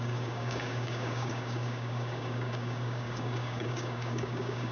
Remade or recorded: remade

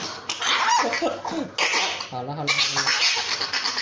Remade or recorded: recorded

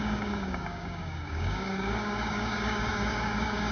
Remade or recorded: remade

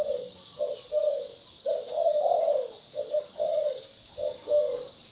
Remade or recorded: remade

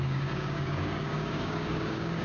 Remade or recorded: remade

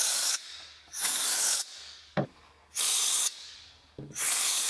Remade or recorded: remade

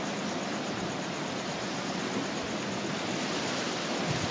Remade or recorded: recorded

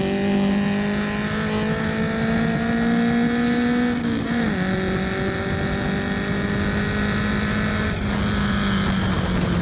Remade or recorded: recorded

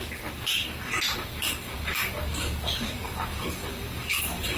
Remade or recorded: remade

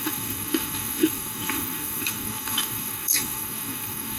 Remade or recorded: remade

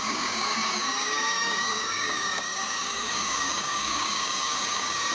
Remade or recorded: remade